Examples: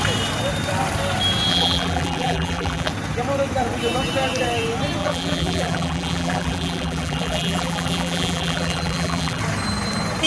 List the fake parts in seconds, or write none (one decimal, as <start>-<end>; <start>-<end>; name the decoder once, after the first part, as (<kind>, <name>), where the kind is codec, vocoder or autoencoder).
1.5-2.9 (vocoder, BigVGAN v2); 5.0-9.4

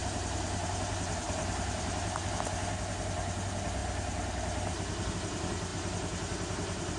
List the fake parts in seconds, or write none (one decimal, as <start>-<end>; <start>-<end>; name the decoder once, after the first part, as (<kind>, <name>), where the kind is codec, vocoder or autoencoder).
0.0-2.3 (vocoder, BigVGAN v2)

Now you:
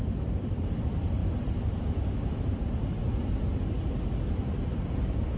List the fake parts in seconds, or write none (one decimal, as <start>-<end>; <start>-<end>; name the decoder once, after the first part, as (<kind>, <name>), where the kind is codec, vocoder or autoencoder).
0.0-3.0 (vocoder, BigVGAN v2); 4.5-5.4

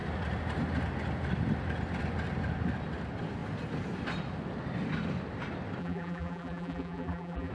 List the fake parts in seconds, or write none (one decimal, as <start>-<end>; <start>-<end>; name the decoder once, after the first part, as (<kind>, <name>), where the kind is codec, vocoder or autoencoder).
5.8-7.5 (vocoder, BigVGAN v2)

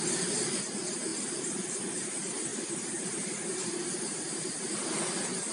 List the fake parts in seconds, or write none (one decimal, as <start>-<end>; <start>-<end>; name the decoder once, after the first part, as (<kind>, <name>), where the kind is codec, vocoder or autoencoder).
2.5-4.7 (vocoder, BigVGAN v2)

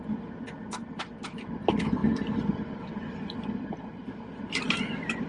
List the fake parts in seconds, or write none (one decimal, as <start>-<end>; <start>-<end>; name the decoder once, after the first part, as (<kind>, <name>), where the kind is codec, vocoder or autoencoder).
none